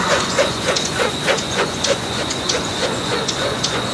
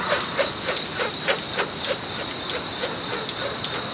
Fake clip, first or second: first